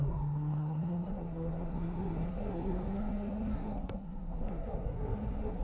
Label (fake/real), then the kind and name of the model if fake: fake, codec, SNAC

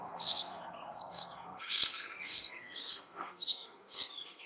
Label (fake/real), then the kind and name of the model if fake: fake, codec, SNAC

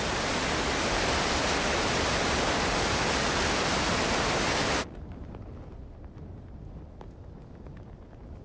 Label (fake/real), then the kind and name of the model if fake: real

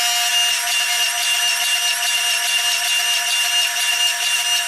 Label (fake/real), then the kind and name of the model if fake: real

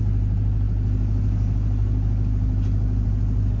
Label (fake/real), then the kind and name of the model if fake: real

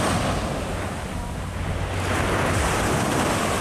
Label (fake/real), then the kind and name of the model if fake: real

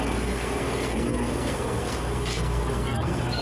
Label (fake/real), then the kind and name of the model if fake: fake, codec, SNAC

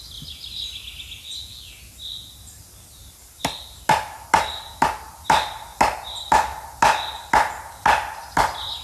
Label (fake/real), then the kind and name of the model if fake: real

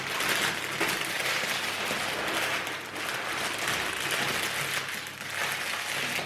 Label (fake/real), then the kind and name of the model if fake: real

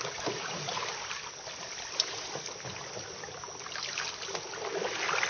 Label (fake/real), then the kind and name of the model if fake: real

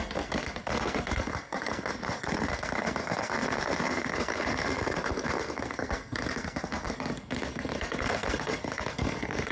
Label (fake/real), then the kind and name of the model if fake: fake, codec, SNAC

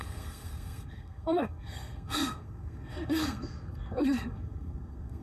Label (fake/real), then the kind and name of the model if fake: fake, codec, SNAC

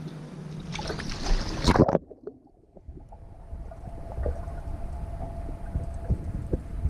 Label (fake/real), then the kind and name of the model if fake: real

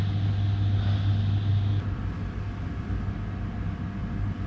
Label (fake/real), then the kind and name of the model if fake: real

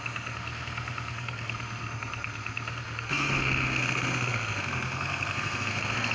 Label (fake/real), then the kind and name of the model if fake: fake, codec, SNAC